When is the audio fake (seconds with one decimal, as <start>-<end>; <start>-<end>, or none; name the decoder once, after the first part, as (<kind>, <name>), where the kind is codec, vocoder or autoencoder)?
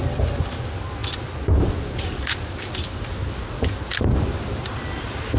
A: none